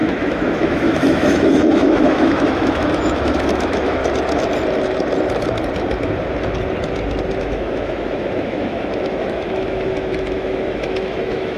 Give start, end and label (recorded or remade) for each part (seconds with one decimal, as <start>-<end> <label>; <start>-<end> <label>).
0.0-4.0 remade; 4.0-7.4 recorded; 7.4-11.6 remade